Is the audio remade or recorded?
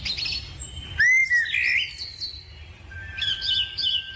recorded